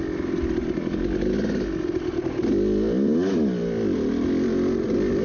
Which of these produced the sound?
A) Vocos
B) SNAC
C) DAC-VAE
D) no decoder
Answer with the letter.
D